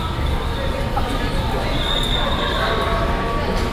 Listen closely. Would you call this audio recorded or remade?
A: recorded